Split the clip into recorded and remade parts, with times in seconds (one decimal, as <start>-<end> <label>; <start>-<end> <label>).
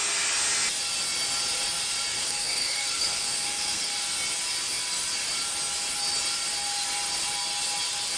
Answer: 0.0-2.2 recorded; 2.2-3.9 remade; 3.9-8.2 recorded